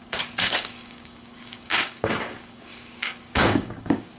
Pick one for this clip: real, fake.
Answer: fake